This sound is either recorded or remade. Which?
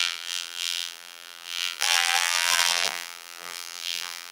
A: remade